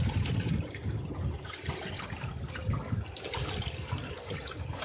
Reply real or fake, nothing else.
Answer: real